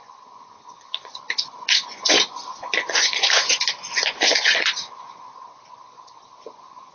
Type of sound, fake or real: fake